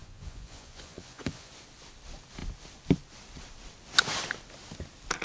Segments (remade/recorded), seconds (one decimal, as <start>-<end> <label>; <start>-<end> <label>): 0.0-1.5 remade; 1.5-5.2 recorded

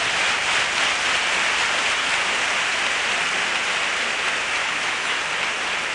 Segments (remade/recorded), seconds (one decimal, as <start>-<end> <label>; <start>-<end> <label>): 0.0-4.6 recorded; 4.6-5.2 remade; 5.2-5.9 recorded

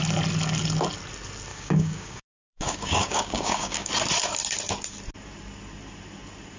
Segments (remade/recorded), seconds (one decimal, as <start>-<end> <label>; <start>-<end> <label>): 0.0-1.5 recorded; 1.5-3.9 remade; 3.9-6.6 recorded

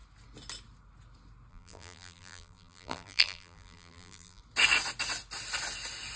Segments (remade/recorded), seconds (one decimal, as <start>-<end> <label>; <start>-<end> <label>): 0.0-1.5 recorded; 1.5-4.4 remade; 4.4-6.2 recorded

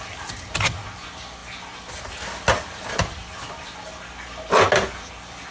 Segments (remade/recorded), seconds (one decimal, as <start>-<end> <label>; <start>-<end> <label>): 0.0-5.5 recorded